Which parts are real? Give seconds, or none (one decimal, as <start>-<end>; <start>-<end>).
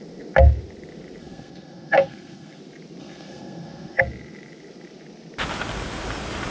0.0-1.2; 2.6-3.0; 4.0-6.5